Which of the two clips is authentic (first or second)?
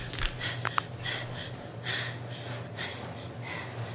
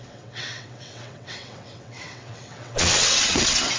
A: first